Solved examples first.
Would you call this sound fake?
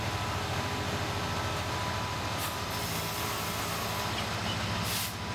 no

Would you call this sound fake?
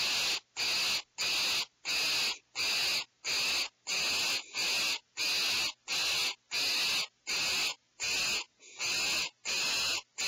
no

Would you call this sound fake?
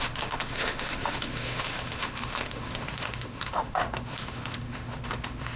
yes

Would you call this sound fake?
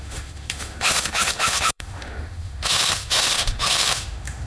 yes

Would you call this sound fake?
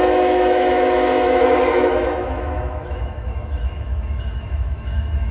yes